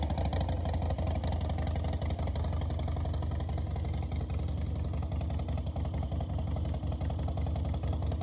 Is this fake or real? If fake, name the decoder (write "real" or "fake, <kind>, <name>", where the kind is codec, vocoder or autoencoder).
real